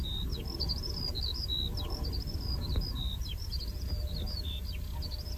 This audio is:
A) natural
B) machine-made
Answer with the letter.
A